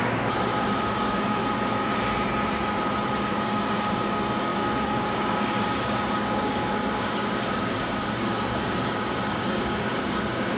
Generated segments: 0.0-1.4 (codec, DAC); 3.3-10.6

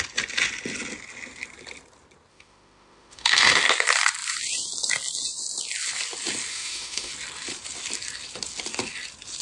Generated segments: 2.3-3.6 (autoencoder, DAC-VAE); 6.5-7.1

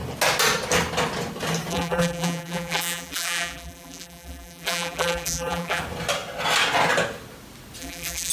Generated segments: 1.7-5.8 (vocoder, BigVGAN v2); 7.8-8.3